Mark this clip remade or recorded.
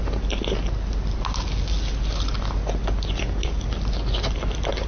recorded